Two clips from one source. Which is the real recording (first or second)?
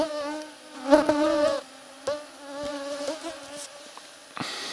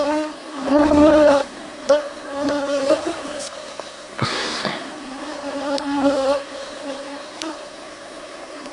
first